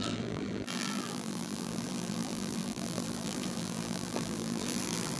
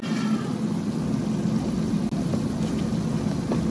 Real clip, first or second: second